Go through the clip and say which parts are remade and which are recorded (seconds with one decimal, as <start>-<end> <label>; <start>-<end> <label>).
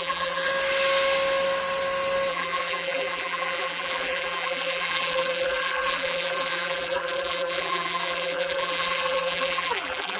0.0-0.5 remade; 0.5-2.3 recorded; 2.3-10.2 remade